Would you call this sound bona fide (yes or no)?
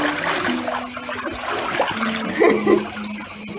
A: yes